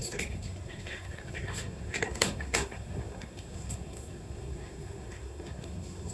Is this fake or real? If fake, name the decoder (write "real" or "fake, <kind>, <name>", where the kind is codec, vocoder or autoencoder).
fake, codec, SNAC